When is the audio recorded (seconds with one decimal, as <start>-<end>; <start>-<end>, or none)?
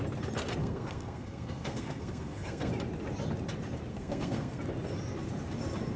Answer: 0.0-0.6; 2.7-3.9; 4.6-6.0